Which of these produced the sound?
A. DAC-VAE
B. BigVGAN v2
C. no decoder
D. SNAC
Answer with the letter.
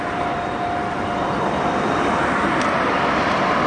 B